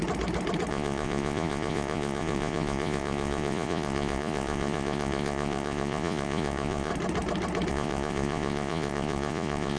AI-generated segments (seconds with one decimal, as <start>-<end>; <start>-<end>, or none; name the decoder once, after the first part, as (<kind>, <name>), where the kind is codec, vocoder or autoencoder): 0.7-6.9 (vocoder, Vocos); 7.7-9.8